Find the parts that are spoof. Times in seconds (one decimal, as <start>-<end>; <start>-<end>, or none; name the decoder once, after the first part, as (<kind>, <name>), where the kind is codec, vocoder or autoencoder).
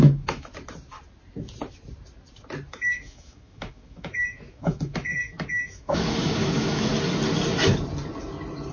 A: 0.0-0.5 (autoencoder, DAC-VAE); 2.7-6.9